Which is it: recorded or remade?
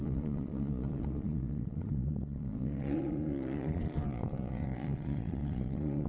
remade